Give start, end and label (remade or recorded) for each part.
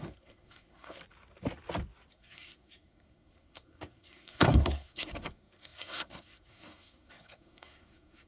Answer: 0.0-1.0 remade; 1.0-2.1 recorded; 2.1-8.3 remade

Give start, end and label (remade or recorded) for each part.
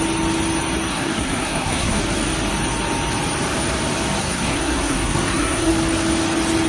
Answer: 0.0-0.9 recorded; 0.9-2.0 remade; 2.0-4.2 recorded; 4.2-5.7 remade; 5.7-6.7 recorded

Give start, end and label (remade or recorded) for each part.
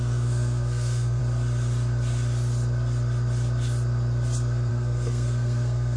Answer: 0.0-1.2 remade; 1.2-4.7 recorded; 4.7-6.0 remade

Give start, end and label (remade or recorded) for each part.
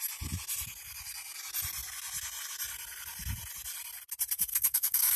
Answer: 0.0-4.5 recorded; 4.5-5.2 remade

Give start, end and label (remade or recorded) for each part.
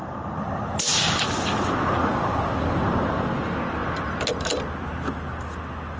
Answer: 0.0-6.0 recorded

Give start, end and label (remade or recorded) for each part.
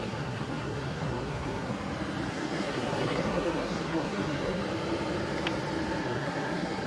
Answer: 0.0-1.7 remade; 1.7-2.3 recorded; 2.3-4.6 remade; 4.6-6.0 recorded; 6.0-6.9 remade